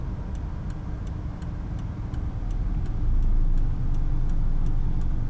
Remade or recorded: recorded